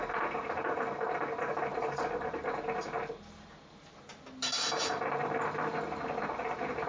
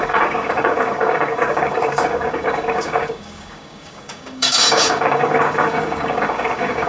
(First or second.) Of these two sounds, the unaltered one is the first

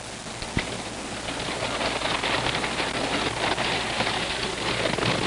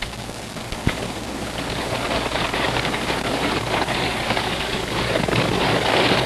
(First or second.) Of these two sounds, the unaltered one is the first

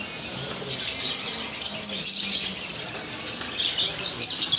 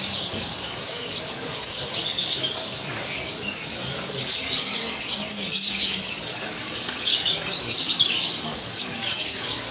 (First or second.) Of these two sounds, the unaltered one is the first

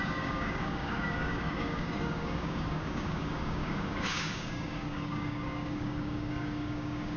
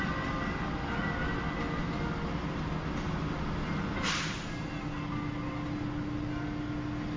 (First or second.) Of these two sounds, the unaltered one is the second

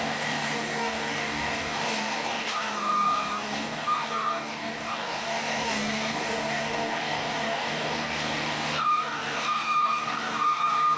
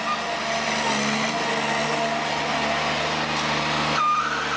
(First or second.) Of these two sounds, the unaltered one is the second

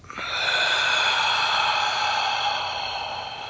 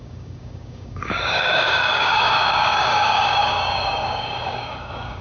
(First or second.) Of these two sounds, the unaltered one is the first